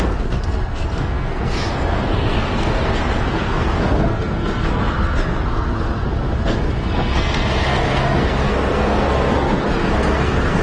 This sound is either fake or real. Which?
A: fake